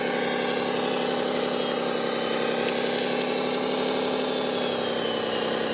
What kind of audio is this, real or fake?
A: real